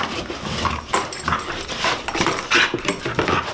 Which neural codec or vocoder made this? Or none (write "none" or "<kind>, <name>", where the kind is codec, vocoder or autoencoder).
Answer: none